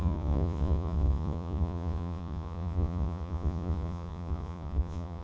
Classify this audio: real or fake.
fake